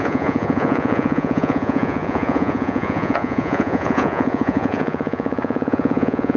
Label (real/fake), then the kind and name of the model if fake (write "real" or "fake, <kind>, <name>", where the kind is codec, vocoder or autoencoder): fake, vocoder, Vocos